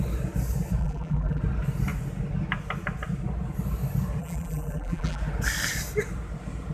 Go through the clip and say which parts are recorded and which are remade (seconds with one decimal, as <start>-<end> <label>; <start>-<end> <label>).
0.0-0.8 recorded; 0.8-1.4 remade; 1.4-4.2 recorded; 4.2-5.2 remade; 5.2-6.7 recorded